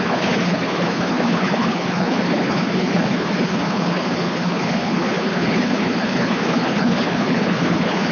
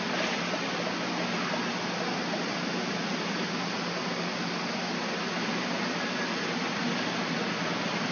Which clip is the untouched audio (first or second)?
second